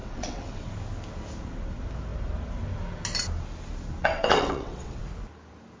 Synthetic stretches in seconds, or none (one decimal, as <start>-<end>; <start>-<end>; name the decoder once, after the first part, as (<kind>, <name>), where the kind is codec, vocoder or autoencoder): 0.0-0.7 (vocoder, WaveNeXt); 4.0-5.0